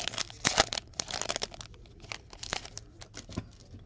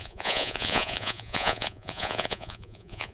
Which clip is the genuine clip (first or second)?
first